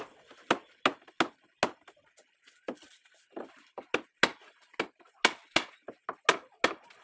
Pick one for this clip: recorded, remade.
recorded